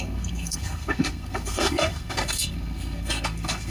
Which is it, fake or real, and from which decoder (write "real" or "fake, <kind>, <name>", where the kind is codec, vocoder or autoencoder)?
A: fake, codec, SNAC